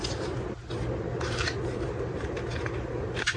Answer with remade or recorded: recorded